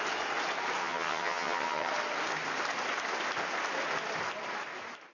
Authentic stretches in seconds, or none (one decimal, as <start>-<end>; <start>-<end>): 0.0-0.8; 1.9-5.1